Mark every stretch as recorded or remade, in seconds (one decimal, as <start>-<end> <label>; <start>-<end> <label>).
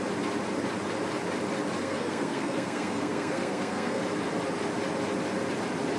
0.0-1.8 recorded; 1.8-4.0 remade; 4.0-6.0 recorded